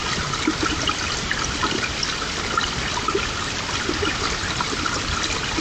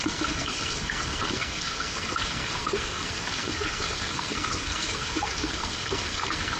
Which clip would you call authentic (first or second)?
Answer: first